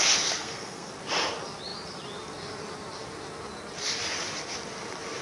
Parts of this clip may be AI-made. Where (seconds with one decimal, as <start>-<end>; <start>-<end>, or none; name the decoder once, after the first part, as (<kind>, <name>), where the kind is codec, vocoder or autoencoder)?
0.4-0.9 (codec, SNAC)